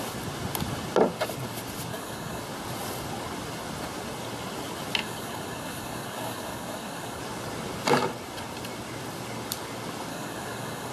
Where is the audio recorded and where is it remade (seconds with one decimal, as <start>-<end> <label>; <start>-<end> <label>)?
0.0-1.9 recorded; 1.9-2.4 remade; 2.4-5.0 recorded; 5.0-7.2 remade; 7.2-10.1 recorded; 10.1-10.9 remade